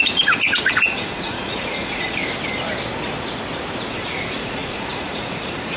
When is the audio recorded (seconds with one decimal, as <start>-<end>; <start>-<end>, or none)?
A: 2.2-3.9